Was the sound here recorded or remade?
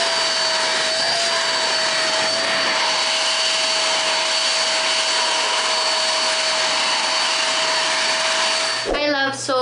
recorded